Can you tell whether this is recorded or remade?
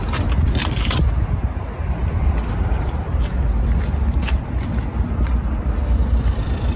remade